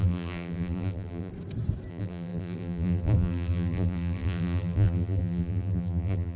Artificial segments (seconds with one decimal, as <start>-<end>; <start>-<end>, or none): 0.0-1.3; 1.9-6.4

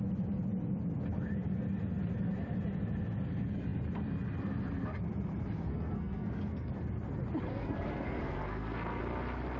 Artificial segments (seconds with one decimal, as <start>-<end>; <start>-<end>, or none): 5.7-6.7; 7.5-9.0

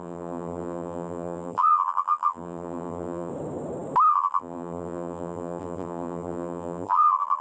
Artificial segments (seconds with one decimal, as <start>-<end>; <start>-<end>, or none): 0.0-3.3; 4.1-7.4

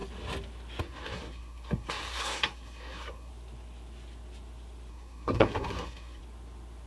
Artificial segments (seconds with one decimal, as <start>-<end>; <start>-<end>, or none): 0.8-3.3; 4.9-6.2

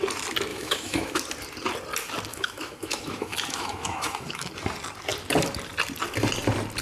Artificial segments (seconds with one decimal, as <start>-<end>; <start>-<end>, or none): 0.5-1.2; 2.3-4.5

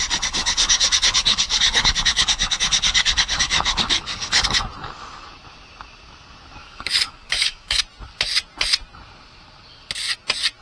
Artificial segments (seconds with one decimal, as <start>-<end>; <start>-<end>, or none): 0.4-4.5; 6.6-7.8

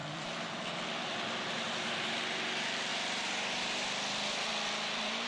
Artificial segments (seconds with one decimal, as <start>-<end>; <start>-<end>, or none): 0.0-5.3

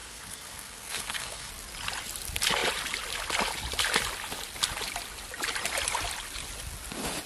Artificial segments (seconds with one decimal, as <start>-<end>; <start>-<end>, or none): 0.0-1.5